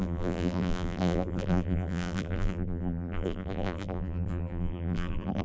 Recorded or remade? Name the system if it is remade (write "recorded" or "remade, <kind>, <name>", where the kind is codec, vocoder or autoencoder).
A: remade, vocoder, BigVGAN v2